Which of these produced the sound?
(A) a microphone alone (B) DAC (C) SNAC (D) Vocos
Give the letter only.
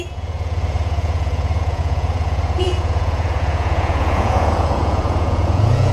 D